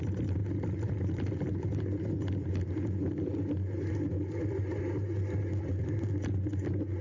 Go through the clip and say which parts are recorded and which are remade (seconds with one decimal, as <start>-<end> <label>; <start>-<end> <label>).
0.0-7.0 recorded